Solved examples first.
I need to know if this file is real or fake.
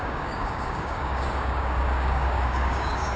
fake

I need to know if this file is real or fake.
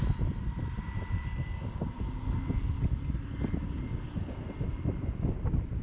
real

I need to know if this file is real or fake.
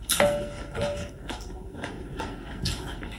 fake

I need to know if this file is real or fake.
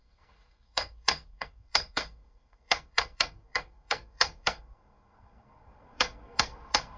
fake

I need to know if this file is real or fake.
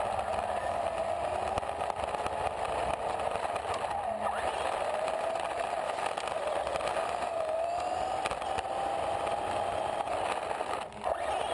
real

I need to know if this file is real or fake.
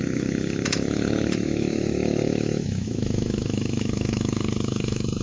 fake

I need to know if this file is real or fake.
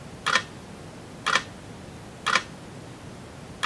real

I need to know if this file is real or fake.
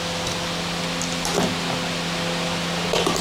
real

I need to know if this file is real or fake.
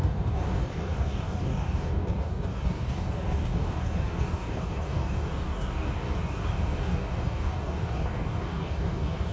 fake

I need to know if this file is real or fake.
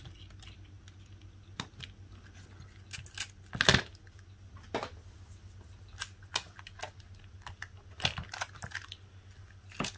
real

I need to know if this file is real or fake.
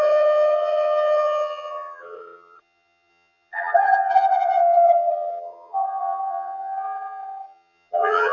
fake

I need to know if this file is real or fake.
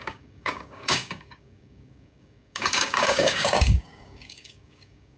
fake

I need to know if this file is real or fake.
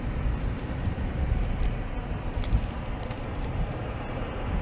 fake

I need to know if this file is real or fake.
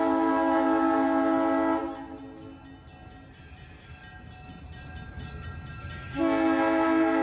real